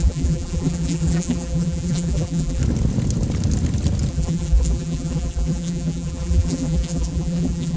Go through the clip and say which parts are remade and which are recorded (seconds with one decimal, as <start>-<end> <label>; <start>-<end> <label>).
0.0-2.6 remade; 2.6-4.1 recorded; 4.1-7.8 remade